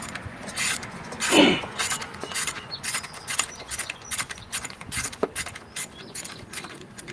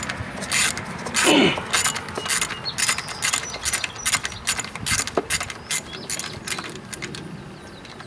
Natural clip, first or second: second